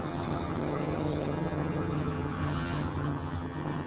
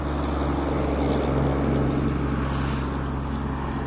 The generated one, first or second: first